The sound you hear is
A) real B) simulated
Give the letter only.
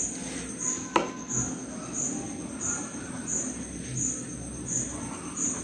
A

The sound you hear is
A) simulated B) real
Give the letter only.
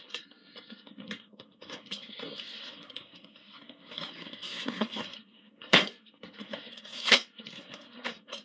A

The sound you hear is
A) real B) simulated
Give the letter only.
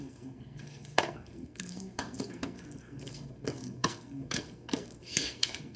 B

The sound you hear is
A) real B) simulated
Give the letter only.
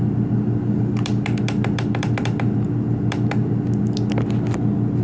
B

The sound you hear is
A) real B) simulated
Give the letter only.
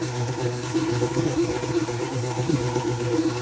B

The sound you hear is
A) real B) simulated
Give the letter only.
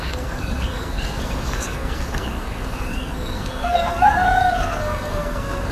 B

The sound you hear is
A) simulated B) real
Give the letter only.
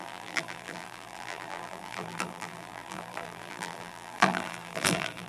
A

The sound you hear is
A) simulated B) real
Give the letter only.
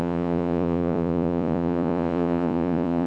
A